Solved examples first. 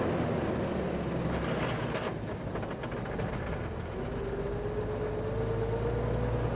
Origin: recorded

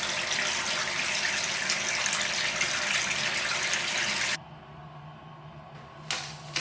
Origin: recorded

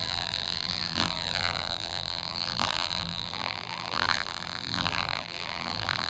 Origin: remade